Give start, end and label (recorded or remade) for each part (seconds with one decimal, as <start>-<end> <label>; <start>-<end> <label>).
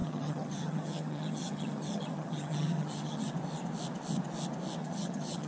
0.0-3.3 remade; 3.3-4.8 recorded; 4.8-5.5 remade